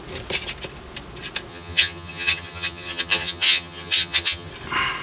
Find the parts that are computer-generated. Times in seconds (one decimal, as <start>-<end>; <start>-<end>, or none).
1.5-4.5